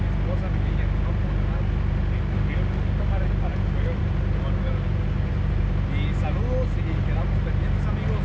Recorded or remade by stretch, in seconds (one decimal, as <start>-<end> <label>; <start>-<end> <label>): 0.0-8.2 recorded